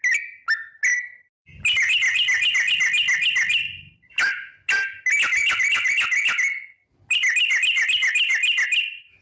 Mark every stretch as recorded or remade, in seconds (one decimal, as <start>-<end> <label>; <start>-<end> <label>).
0.0-9.2 recorded